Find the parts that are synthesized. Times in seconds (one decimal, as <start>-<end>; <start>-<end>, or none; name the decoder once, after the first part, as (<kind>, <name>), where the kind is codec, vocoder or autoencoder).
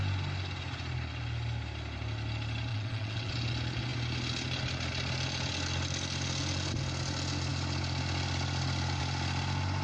2.7-3.3 (vocoder, WaveNeXt)